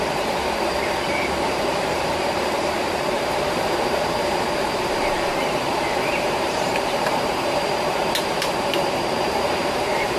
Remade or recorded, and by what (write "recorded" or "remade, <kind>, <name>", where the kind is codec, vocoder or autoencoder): remade, vocoder, BigVGAN v2